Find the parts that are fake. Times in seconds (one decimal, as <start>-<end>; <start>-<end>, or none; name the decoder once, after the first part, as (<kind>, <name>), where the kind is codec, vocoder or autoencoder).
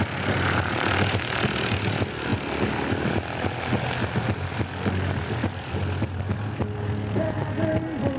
none